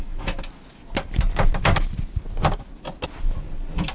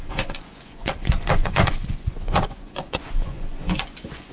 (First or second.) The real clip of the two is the first